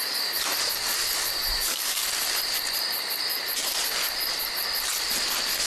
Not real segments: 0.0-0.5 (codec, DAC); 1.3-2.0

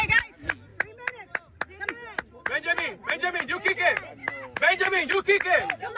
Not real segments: 4.2-5.1 (autoencoder, DAC-VAE)

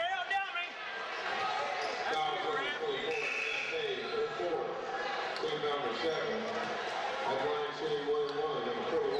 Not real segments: 2.3-5.5 (vocoder, BigVGAN v2)

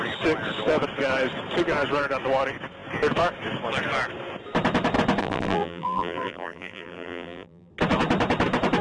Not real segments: 5.2-7.7 (vocoder, BigVGAN v2)

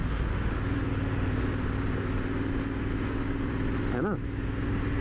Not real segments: none